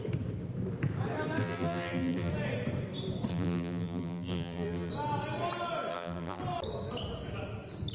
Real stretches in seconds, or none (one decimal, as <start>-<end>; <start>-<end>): 0.0-1.4; 2.3-3.3; 4.9-5.9; 6.4-7.9